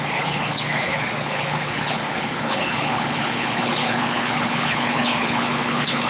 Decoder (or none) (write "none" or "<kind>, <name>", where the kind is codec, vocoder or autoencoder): codec, HILCodec